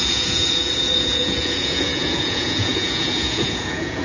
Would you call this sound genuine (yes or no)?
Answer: no